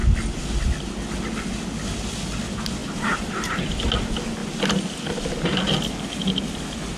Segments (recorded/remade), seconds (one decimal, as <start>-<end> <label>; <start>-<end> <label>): 0.0-2.8 recorded; 2.8-3.9 remade; 3.9-7.0 recorded